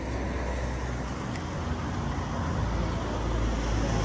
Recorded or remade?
recorded